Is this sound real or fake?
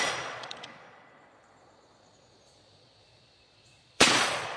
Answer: fake